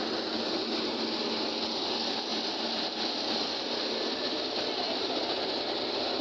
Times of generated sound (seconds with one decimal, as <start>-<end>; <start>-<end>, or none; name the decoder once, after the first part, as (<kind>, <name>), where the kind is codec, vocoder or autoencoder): 2.3-3.5 (vocoder, BigVGAN v2)